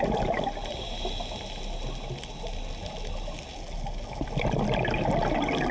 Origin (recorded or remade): recorded